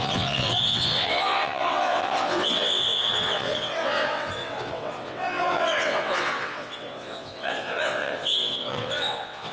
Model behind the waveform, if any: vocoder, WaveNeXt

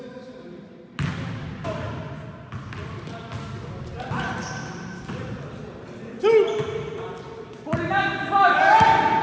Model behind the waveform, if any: none